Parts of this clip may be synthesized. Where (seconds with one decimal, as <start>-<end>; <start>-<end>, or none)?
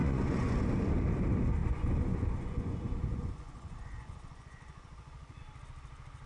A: 0.0-0.6; 1.6-5.4